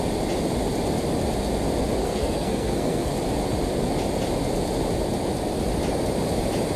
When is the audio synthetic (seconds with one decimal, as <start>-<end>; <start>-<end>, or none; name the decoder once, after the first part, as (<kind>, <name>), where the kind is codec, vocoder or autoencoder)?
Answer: 2.0-3.1 (codec, SNAC)